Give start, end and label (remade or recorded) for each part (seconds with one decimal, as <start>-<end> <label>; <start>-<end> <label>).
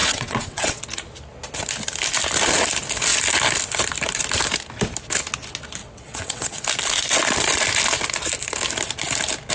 0.0-0.8 remade; 0.8-5.8 recorded; 5.8-6.6 remade; 6.6-9.5 recorded